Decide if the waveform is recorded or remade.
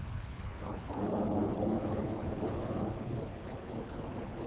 remade